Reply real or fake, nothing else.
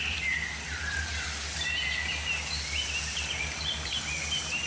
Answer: real